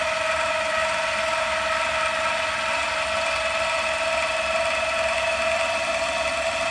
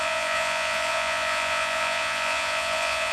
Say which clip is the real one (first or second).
first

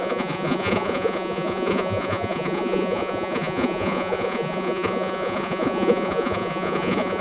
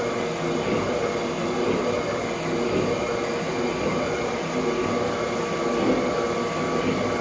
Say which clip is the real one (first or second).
second